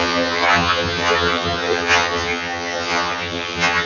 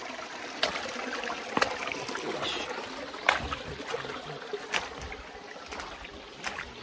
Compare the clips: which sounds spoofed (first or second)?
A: first